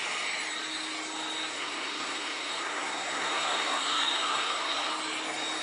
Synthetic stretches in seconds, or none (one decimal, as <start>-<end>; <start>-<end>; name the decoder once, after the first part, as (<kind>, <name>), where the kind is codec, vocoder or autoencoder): 1.5-4.9 (codec, SNAC)